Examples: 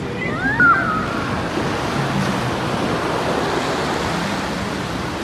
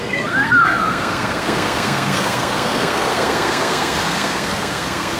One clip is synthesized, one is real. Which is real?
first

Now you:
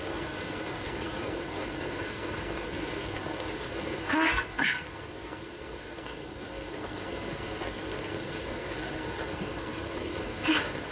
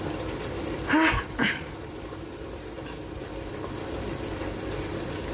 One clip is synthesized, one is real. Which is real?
second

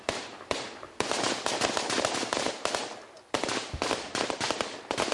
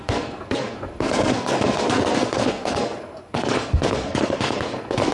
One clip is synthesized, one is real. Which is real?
first